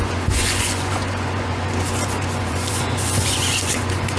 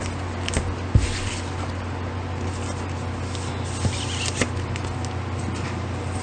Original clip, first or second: second